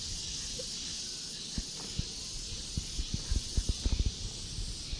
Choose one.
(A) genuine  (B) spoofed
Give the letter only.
A